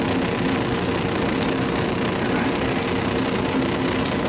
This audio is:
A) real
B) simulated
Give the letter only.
A